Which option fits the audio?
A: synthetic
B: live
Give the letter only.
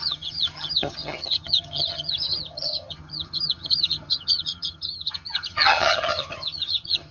A